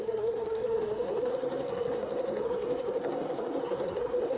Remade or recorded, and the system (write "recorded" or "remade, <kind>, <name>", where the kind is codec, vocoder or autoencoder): remade, codec, SNAC